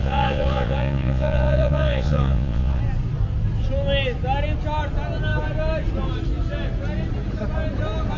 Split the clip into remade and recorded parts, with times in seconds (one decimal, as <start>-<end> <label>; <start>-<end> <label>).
0.0-2.8 remade; 2.8-8.2 recorded